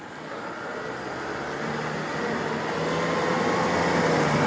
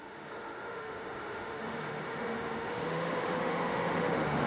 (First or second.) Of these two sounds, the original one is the first